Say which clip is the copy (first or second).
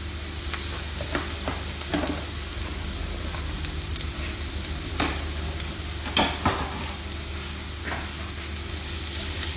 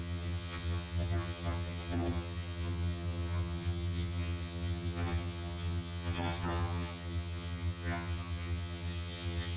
second